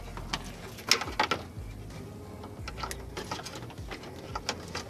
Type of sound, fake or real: real